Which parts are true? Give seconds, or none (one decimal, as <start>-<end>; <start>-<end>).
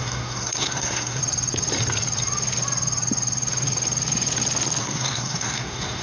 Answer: 1.2-4.8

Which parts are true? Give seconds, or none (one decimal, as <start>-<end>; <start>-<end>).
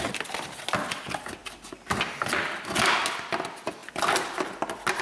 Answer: 0.0-5.0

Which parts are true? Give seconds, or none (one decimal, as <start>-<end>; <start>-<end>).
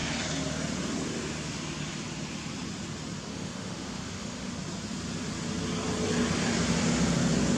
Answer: 0.0-3.3; 4.5-7.6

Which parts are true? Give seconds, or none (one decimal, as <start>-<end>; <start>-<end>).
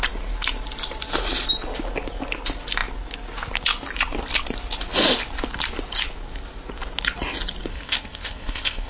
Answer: 0.0-7.7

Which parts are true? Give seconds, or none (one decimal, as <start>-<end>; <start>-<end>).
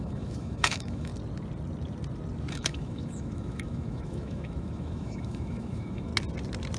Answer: 1.1-2.5; 6.1-6.8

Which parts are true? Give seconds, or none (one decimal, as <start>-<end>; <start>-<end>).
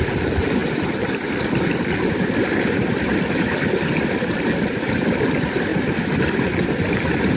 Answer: 0.0-7.4